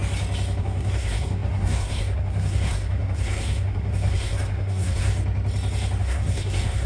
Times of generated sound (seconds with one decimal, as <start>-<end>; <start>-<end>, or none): 0.6-5.1; 6.0-6.9